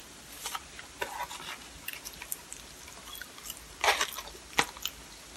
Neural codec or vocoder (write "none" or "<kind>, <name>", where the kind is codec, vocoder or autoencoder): none